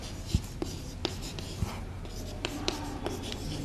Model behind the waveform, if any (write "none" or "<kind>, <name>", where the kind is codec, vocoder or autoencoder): none